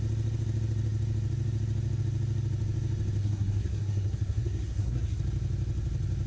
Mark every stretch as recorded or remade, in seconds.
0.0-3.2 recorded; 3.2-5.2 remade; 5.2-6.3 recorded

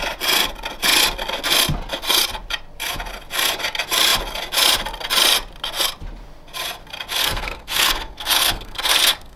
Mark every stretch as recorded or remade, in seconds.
0.0-7.2 recorded; 7.2-9.4 remade

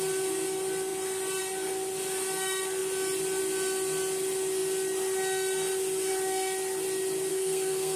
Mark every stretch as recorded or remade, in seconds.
0.0-7.3 recorded; 7.3-8.0 remade

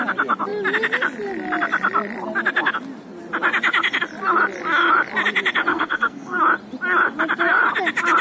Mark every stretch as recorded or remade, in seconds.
0.0-5.7 recorded; 5.7-6.4 remade; 6.4-8.2 recorded